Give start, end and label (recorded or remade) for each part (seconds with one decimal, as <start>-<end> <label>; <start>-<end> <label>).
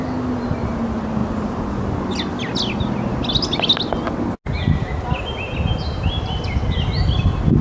0.0-7.6 recorded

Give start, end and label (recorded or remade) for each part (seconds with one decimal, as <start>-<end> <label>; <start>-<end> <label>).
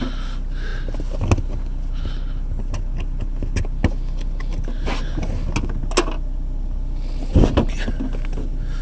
0.0-8.8 recorded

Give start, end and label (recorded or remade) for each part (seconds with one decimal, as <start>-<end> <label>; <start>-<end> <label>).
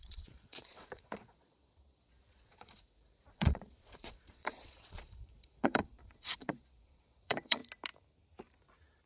0.0-7.6 remade; 7.6-9.1 recorded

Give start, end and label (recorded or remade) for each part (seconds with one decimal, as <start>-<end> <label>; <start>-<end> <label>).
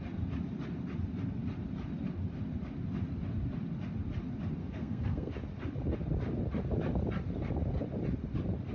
0.0-4.6 recorded; 4.6-5.3 remade; 5.3-8.7 recorded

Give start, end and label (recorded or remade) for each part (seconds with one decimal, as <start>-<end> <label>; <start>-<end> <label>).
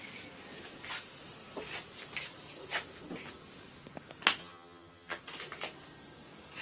0.0-4.4 recorded; 4.4-5.2 remade; 5.2-6.6 recorded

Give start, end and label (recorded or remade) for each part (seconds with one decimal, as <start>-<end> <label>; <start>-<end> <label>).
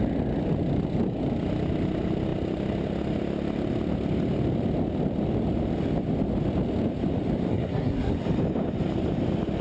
0.0-7.5 recorded; 7.5-8.1 remade; 8.1-9.6 recorded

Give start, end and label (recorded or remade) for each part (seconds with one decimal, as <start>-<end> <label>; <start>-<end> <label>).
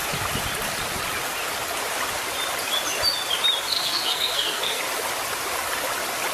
0.0-3.7 recorded; 3.7-4.8 remade; 4.8-6.3 recorded